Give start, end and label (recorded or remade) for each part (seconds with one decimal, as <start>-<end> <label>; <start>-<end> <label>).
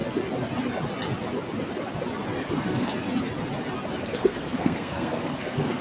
0.0-2.5 recorded; 2.5-2.9 remade; 2.9-4.0 recorded; 4.0-5.8 remade